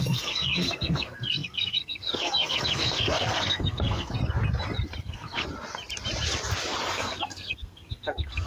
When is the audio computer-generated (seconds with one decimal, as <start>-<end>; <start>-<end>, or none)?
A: 0.0-4.2; 5.0-5.4; 6.9-8.5